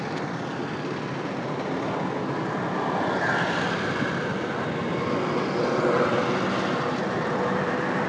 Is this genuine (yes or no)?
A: yes